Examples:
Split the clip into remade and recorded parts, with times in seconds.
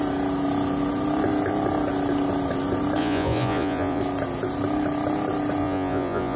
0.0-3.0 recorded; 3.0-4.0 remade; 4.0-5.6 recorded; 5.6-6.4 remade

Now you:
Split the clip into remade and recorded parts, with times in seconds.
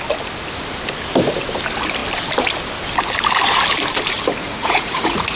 0.0-4.4 recorded; 4.4-5.4 remade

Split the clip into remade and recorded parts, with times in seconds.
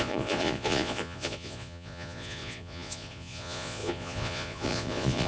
0.0-5.3 remade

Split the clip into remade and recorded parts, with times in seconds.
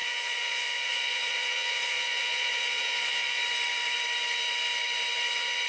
0.0-3.4 remade; 3.4-5.7 recorded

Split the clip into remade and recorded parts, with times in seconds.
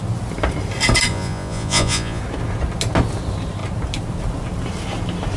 0.0-1.1 recorded; 1.1-2.2 remade; 2.2-5.4 recorded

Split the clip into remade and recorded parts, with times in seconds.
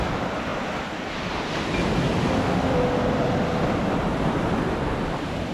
0.0-5.5 recorded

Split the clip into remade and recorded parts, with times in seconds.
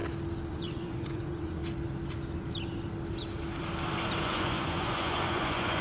0.0-0.5 recorded; 0.5-1.6 remade; 1.6-4.2 recorded; 4.2-5.8 remade